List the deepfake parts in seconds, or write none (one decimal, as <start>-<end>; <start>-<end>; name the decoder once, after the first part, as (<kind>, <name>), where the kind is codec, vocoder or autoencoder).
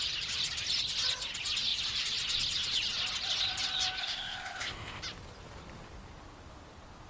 4.0-5.0 (codec, ZipCodec)